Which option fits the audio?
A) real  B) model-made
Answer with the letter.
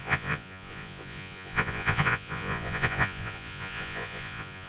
B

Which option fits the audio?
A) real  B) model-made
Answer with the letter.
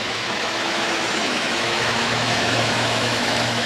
B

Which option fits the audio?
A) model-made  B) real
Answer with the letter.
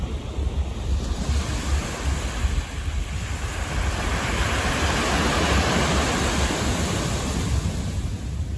B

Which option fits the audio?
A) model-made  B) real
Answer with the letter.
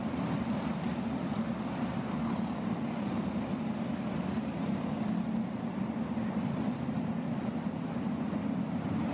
B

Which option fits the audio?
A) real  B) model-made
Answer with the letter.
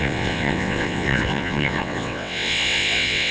B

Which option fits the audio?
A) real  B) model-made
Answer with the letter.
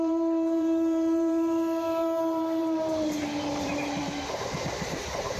B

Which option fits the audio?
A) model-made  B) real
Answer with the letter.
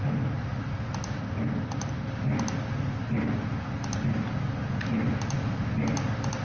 B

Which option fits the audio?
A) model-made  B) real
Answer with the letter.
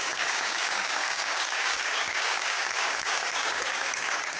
A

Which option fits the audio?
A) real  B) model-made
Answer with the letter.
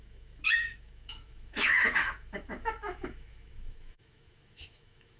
B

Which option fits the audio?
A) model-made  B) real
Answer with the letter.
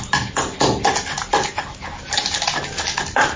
B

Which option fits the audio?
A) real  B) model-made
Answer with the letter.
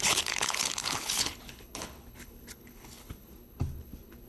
B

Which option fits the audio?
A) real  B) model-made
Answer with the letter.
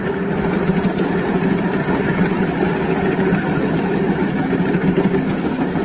A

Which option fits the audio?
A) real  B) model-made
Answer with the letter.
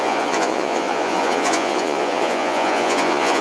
B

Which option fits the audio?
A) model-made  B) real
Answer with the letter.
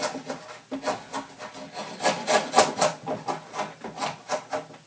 B